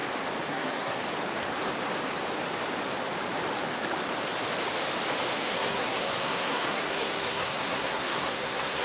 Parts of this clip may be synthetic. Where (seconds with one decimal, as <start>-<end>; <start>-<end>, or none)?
0.5-1.0; 5.4-8.8